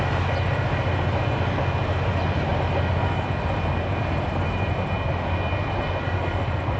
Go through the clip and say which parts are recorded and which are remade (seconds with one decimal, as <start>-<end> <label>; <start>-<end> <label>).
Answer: 0.0-6.8 recorded